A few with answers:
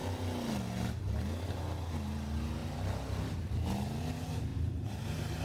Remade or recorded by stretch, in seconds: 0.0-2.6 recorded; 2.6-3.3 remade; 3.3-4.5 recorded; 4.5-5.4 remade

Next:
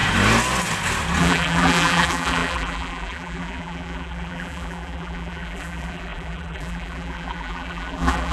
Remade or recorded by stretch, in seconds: 0.0-1.2 recorded; 1.2-8.3 remade

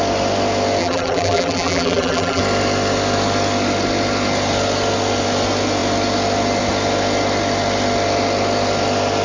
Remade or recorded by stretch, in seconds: 0.0-0.8 recorded; 0.8-2.4 remade; 2.4-9.2 recorded

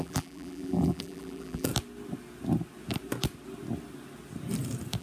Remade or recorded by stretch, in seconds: 0.0-1.7 remade; 1.7-5.0 recorded

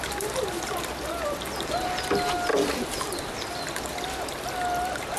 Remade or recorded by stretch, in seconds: 0.0-2.5 recorded; 2.5-3.2 remade; 3.2-5.2 recorded